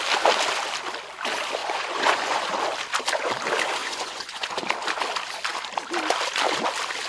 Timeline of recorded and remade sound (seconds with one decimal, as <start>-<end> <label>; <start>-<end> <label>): 0.0-1.6 recorded; 1.6-2.5 remade; 2.5-3.8 recorded; 3.8-4.6 remade; 4.6-7.1 recorded